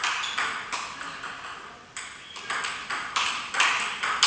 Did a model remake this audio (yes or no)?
no